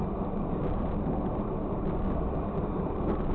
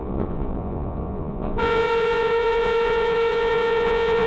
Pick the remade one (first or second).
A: second